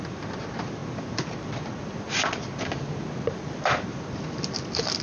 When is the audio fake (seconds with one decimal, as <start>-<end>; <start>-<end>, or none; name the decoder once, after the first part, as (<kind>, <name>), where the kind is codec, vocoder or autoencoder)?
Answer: none